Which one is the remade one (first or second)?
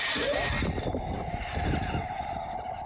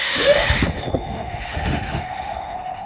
second